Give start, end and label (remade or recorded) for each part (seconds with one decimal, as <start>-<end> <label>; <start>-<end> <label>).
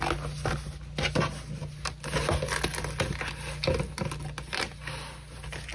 0.0-5.7 recorded